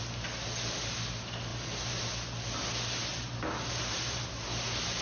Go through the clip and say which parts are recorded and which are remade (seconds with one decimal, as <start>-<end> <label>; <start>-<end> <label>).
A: 0.0-1.5 recorded; 1.5-2.1 remade; 2.1-3.1 recorded; 3.1-4.3 remade; 4.3-5.0 recorded